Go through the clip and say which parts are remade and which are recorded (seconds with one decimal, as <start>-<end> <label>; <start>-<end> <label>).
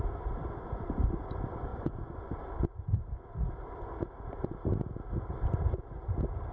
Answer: 0.0-6.5 recorded